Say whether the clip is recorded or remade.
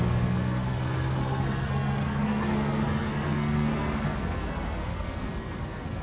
remade